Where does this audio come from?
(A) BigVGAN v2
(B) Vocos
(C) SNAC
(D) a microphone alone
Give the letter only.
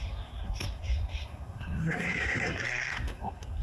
C